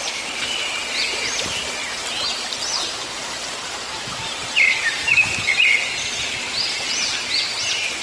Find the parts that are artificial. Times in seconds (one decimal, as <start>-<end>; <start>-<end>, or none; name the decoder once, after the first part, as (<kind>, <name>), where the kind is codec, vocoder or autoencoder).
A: 0.0-1.8 (vocoder, BigVGAN v2); 2.5-5.1